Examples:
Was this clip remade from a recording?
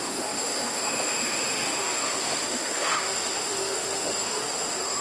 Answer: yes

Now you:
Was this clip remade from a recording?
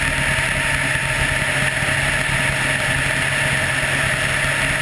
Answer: no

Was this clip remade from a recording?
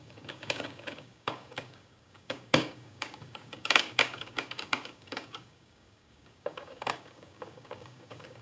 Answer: yes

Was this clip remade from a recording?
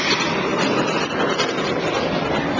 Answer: no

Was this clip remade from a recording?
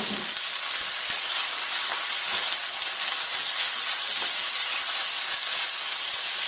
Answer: no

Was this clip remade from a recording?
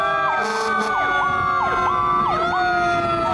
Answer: no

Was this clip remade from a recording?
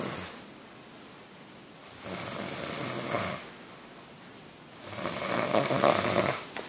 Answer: no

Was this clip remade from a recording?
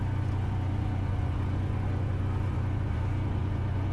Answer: yes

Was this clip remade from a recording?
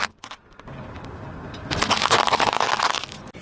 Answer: no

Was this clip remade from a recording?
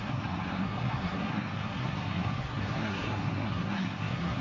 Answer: yes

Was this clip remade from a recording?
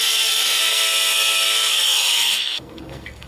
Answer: yes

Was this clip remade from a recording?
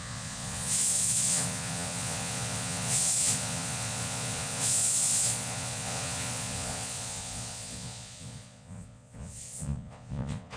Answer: yes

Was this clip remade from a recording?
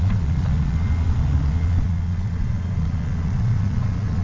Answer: yes